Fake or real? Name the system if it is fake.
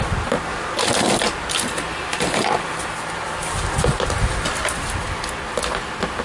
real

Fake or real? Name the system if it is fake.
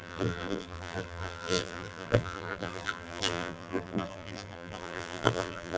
fake, vocoder, BigVGAN v2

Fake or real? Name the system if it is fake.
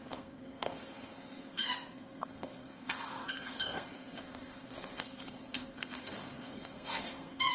fake, codec, SNAC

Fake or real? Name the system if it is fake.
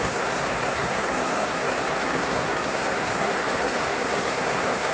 fake, codec, SNAC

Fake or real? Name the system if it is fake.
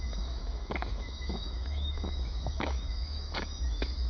fake, autoencoder, DAC-VAE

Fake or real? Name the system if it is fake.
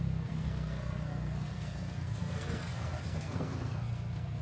fake, codec, SNAC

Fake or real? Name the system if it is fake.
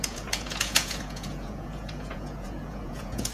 fake, vocoder, Vocos